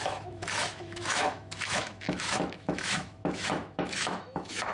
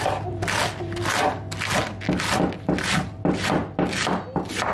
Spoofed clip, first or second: first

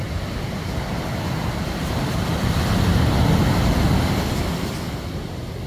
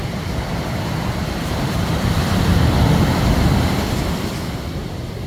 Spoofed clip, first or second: second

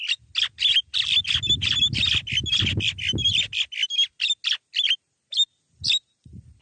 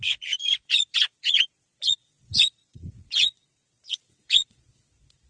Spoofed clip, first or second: second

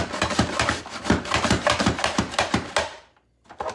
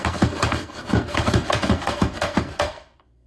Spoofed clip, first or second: second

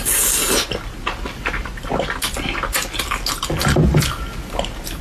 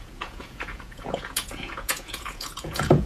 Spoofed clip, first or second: second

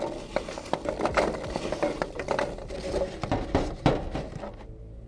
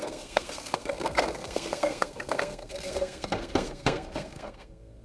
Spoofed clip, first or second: second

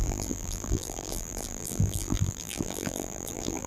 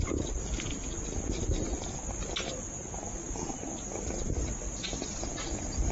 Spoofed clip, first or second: first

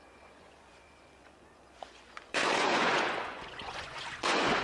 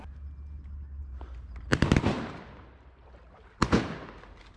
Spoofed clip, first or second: first